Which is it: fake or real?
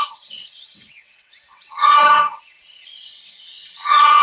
fake